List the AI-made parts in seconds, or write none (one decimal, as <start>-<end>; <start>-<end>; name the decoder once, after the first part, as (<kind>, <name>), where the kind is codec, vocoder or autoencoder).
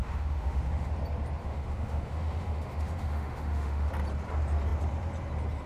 0.0-0.9 (autoencoder, DAC-VAE); 1.4-3.9